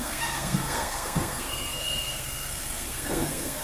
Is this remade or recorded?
remade